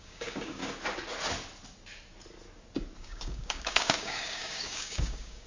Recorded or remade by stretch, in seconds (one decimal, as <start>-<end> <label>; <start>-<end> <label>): 0.0-0.6 remade; 0.6-3.0 recorded; 3.0-5.5 remade